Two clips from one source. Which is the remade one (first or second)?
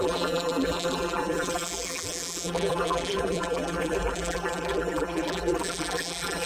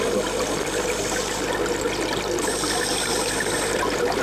first